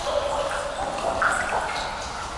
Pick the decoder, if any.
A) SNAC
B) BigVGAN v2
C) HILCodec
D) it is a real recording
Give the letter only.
D